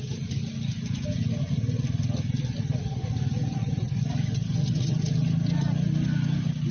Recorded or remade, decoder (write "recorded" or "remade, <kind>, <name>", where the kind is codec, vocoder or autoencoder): recorded